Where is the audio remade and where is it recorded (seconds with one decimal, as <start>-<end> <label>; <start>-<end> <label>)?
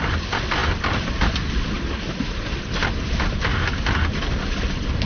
0.0-5.1 recorded